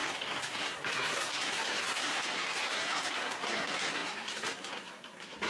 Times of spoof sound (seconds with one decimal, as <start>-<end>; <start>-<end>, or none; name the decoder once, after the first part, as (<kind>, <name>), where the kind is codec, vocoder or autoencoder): 0.0-5.5 (codec, SNAC)